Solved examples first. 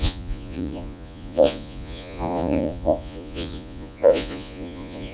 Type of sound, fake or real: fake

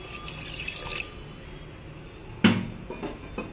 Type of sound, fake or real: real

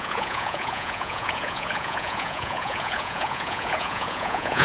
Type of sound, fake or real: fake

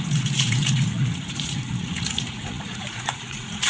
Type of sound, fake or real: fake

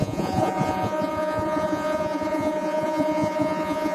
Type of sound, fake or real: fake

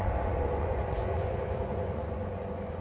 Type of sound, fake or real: fake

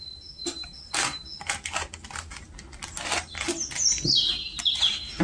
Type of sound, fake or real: real